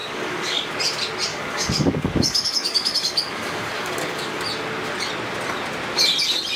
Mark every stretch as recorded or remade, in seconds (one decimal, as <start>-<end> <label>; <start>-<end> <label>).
0.0-0.7 remade; 0.7-1.3 recorded; 1.3-4.4 remade; 4.4-6.6 recorded